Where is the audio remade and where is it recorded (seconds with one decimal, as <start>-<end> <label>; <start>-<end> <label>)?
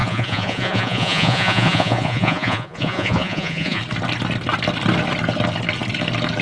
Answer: 0.0-3.8 remade; 3.8-6.4 recorded